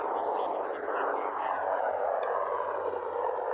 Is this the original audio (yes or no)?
yes